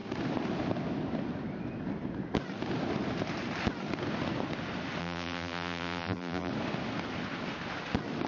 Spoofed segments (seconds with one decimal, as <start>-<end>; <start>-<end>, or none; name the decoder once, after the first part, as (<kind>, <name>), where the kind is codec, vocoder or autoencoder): 5.0-6.5 (vocoder, BigVGAN v2)